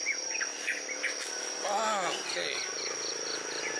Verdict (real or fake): real